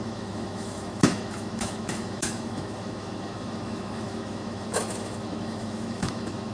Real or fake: fake